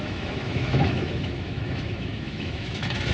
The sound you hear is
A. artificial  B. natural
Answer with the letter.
A